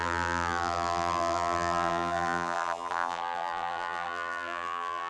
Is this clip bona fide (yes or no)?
no